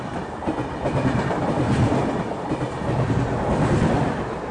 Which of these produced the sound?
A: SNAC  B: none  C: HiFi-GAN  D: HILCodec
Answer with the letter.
B